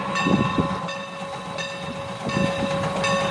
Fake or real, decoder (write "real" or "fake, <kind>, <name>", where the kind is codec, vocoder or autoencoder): real